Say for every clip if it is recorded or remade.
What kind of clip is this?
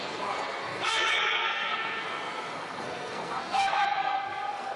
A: remade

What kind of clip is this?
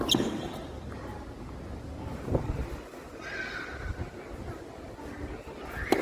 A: recorded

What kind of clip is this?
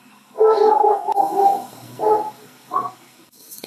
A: remade